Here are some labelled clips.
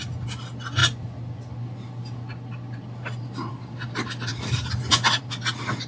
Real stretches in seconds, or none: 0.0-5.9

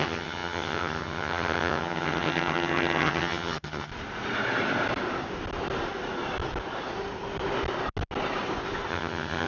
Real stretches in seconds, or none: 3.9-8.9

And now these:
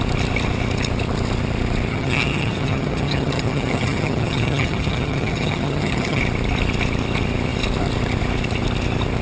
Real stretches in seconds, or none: 0.0-1.9; 6.2-9.2